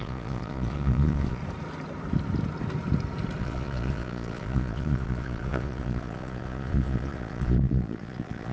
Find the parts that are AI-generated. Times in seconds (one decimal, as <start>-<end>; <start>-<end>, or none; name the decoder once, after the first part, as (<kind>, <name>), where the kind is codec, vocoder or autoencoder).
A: 0.0-1.4 (vocoder, Vocos); 3.4-8.5